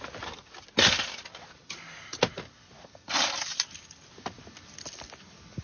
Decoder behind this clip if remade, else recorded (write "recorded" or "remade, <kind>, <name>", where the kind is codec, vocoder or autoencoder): recorded